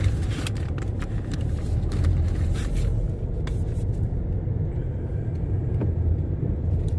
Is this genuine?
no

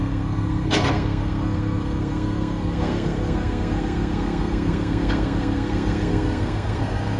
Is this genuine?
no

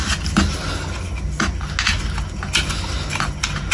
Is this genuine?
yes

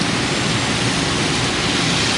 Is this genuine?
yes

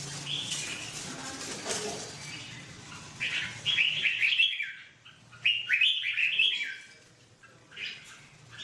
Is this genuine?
yes